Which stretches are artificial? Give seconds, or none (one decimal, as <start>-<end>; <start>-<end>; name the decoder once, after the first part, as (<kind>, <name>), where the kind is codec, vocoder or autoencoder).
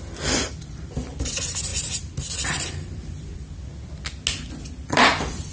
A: 0.0-3.7 (vocoder, BigVGAN v2); 4.9-5.5